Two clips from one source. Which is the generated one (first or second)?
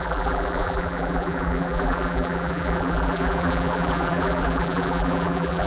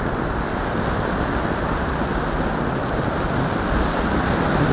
first